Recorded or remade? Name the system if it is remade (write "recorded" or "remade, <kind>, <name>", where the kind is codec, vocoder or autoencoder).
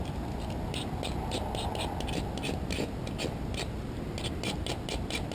recorded